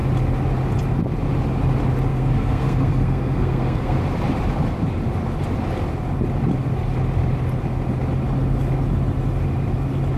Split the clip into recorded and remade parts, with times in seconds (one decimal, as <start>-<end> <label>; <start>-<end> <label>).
0.0-2.1 recorded; 2.1-4.0 remade; 4.0-10.2 recorded